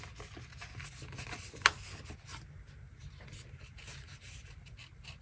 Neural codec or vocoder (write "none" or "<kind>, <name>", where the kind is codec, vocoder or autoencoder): none